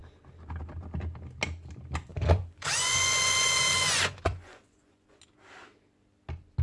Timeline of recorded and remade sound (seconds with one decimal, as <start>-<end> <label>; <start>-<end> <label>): 0.0-2.1 recorded; 2.1-5.2 remade; 5.2-6.6 recorded